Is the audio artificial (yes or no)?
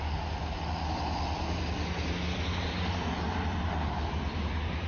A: no